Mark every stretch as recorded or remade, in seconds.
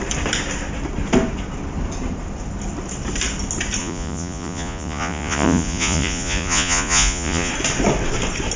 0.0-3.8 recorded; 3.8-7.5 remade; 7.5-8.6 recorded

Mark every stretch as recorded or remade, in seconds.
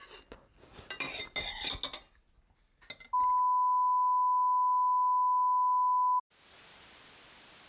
0.0-0.7 recorded; 0.7-1.2 remade; 1.2-7.7 recorded